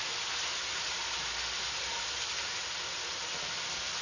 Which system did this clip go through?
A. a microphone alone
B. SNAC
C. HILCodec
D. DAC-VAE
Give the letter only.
A